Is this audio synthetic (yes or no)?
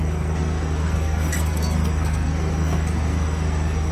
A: yes